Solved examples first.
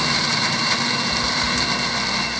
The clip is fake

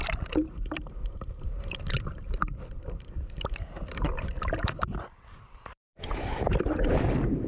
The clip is fake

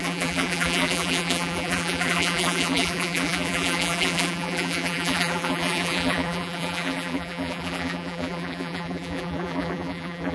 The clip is fake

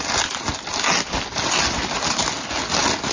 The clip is real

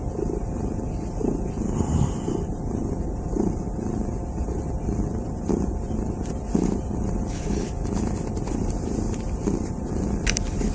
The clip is real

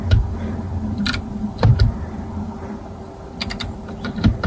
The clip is fake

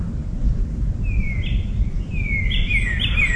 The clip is real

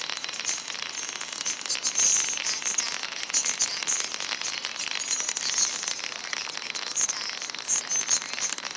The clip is real